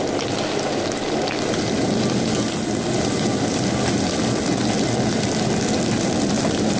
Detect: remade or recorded remade